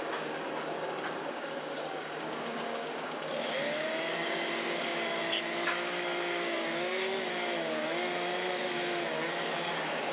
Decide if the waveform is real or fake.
fake